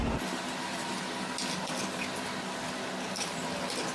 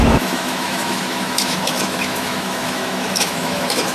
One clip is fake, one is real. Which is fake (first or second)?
second